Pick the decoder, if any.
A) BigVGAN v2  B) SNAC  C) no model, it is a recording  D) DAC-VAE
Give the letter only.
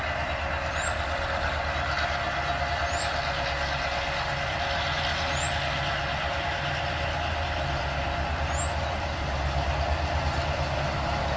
C